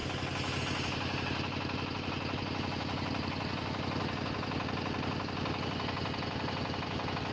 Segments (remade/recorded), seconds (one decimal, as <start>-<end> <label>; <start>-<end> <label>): 0.0-7.3 recorded